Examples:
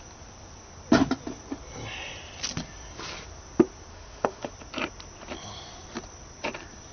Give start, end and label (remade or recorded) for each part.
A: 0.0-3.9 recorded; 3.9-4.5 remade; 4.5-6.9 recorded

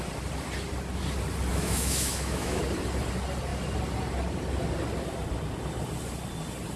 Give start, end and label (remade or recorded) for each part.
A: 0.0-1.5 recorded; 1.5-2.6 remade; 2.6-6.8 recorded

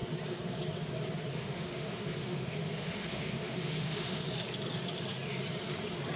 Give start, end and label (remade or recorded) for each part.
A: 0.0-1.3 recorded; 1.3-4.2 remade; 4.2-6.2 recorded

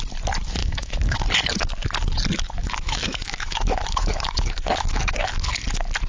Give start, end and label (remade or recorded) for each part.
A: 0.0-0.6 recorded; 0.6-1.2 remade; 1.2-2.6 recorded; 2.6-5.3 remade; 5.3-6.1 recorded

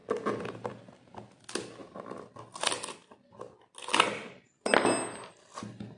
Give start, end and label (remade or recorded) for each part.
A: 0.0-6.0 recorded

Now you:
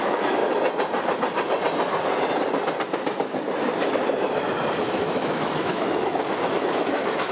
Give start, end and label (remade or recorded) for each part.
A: 0.0-0.4 remade; 0.4-4.8 recorded; 4.8-7.3 remade

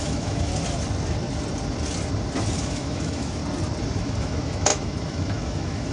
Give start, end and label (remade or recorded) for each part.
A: 0.0-0.5 remade; 0.5-2.5 recorded; 2.5-3.4 remade; 3.4-4.0 recorded; 4.0-5.9 remade

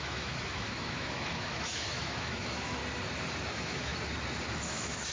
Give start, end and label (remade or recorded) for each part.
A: 0.0-2.8 remade; 2.8-3.5 recorded; 3.5-3.9 remade; 3.9-4.6 recorded; 4.6-5.1 remade